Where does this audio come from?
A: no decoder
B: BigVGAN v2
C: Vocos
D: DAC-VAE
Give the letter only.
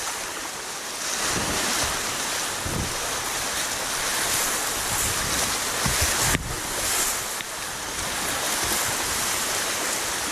A